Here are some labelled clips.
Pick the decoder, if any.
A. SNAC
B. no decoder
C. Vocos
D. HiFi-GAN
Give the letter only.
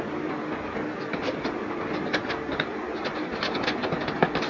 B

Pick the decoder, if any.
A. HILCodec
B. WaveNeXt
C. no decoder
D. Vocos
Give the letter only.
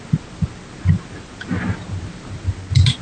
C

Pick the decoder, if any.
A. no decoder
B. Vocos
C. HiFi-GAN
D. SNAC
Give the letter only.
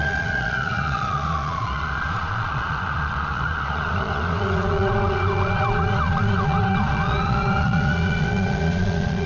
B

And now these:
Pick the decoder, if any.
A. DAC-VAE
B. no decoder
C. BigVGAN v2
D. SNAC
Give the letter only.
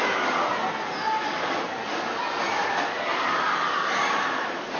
B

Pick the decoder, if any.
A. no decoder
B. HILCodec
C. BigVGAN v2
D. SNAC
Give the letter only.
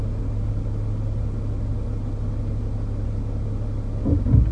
A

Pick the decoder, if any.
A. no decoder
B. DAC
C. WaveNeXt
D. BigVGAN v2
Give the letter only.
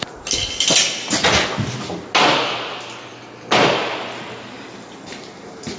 A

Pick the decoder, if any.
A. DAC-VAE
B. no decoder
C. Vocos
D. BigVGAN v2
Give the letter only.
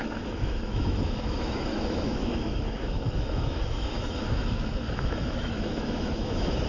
A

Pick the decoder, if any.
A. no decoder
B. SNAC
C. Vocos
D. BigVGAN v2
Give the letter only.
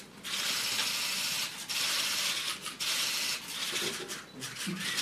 A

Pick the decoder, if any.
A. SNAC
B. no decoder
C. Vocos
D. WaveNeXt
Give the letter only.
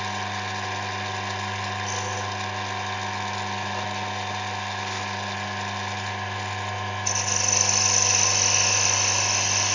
B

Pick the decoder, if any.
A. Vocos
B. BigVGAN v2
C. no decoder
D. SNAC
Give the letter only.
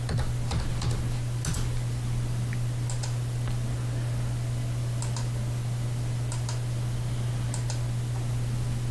C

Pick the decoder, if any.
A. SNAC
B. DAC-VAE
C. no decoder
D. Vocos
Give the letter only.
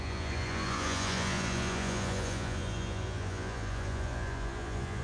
D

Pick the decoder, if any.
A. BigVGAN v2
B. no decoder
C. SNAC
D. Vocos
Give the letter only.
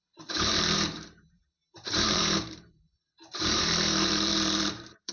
A